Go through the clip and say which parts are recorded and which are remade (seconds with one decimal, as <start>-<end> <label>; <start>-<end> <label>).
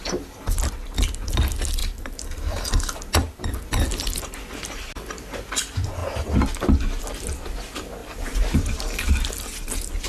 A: 0.0-1.8 recorded; 1.8-2.7 remade; 2.7-8.0 recorded; 8.0-9.2 remade; 9.2-10.1 recorded